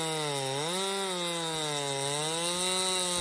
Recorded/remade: recorded